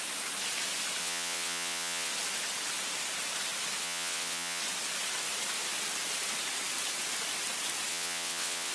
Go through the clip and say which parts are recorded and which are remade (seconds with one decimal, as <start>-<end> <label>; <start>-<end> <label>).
0.0-1.0 recorded; 1.0-2.1 remade; 2.1-3.8 recorded; 3.8-4.6 remade; 4.6-7.9 recorded; 7.9-8.7 remade